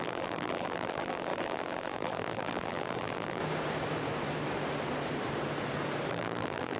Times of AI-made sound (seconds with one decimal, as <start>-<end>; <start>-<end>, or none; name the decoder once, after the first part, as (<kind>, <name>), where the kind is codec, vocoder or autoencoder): 0.0-3.4 (vocoder, BigVGAN v2); 6.1-6.8